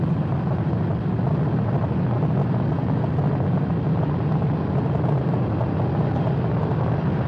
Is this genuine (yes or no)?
yes